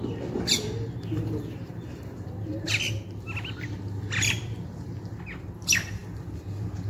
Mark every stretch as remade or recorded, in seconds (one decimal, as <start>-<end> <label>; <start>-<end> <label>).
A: 0.0-6.9 recorded